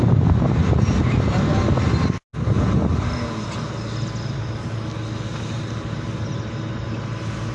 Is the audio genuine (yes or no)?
yes